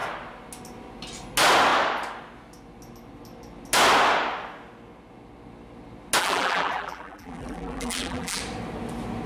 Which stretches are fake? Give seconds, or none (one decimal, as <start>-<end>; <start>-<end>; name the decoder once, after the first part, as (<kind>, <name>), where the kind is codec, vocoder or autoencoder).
6.2-8.4 (vocoder, BigVGAN v2)